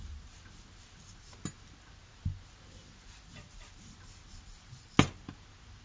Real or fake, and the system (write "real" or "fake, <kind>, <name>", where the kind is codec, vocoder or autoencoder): real